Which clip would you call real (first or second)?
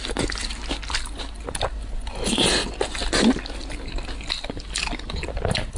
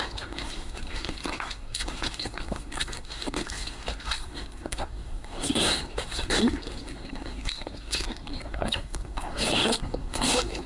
first